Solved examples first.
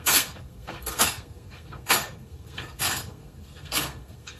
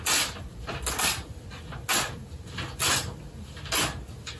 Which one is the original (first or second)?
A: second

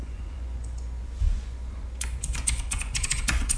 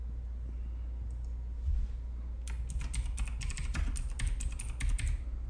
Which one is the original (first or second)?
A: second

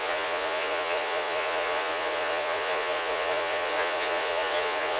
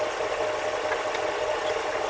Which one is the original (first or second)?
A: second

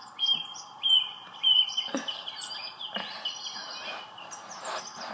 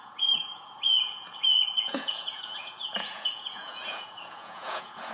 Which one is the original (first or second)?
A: first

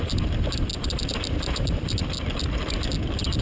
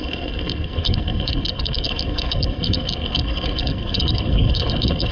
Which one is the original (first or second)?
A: first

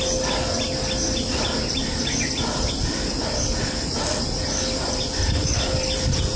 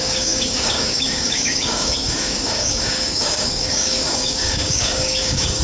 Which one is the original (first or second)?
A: first